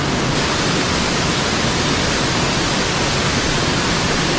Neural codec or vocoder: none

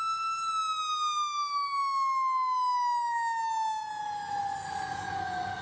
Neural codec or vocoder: none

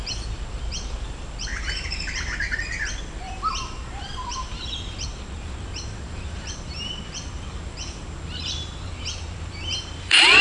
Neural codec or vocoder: vocoder, BigVGAN v2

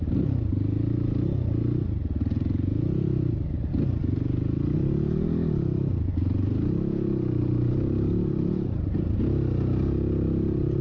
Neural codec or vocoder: none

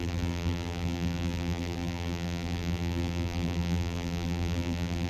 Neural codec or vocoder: vocoder, BigVGAN v2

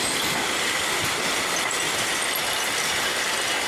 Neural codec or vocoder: none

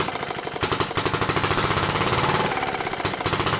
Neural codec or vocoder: vocoder, BigVGAN v2